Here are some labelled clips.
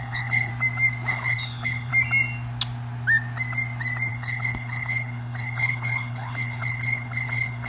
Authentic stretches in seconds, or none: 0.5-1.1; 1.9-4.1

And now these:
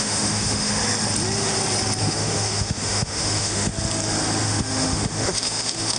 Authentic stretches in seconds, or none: 0.8-2.0; 3.7-4.4

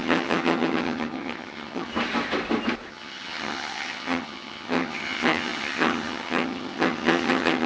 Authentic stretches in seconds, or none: 1.9-2.9

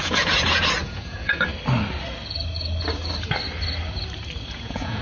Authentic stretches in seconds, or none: 1.5-4.5

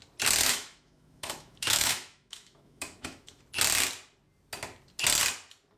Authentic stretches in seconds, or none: 0.0-0.4; 3.4-5.8

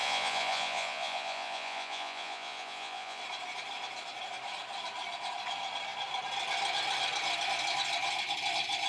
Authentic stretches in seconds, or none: 3.2-8.9

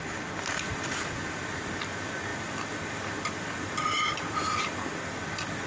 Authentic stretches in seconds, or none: 0.0-5.7